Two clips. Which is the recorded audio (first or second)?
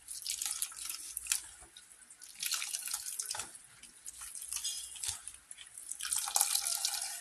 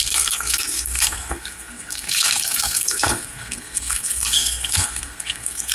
first